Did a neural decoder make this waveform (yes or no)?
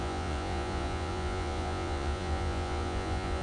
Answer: yes